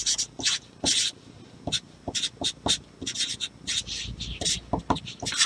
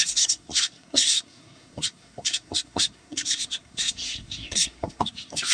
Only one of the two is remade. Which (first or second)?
second